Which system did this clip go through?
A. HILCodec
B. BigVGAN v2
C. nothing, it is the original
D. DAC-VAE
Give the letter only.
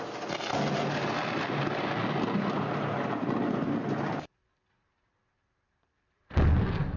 C